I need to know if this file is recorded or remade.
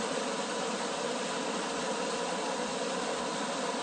recorded